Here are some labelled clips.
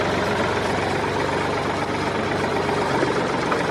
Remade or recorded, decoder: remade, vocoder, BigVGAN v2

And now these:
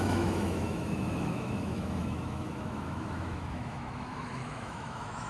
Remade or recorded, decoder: remade, autoencoder, DAC-VAE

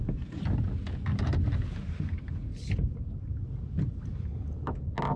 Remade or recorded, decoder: recorded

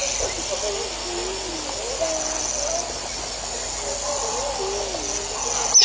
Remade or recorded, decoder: recorded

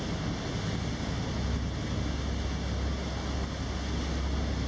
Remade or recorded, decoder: recorded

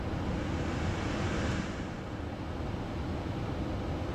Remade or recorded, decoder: recorded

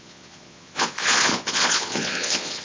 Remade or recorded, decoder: remade, vocoder, Vocos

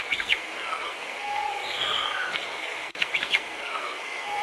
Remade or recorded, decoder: remade, codec, SNAC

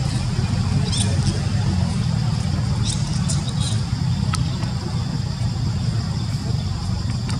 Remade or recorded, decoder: recorded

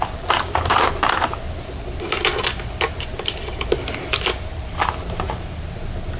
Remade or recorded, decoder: recorded